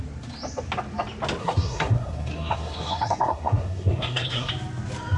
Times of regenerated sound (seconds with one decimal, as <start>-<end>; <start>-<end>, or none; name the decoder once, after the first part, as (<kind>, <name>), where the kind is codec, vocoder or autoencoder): 1.4-4.5 (codec, SNAC)